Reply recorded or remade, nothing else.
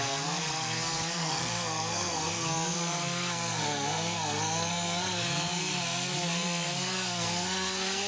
remade